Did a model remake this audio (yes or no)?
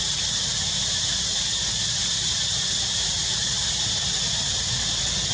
no